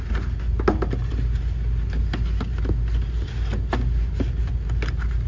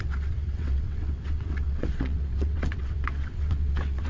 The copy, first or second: second